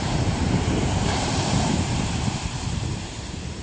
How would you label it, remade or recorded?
remade